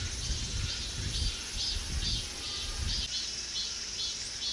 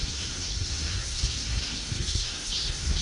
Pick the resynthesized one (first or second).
second